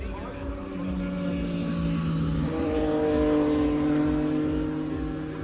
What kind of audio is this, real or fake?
real